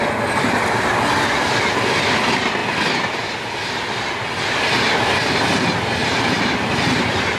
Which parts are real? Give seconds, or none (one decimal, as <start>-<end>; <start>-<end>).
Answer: 0.0-6.0; 6.7-7.4